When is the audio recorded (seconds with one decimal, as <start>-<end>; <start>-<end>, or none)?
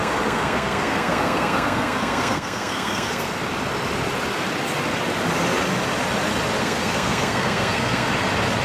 3.4-6.6; 8.1-8.6